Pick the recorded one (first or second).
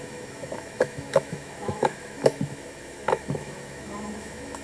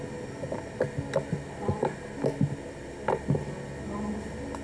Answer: second